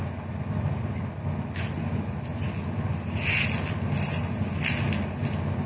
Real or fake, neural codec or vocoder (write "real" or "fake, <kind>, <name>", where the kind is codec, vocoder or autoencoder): real